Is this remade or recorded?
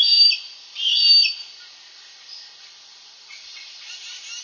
recorded